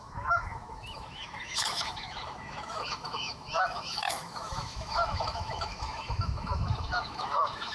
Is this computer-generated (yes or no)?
yes